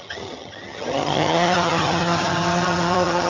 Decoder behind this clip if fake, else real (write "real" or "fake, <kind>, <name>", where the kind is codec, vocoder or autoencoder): fake, vocoder, HiFi-GAN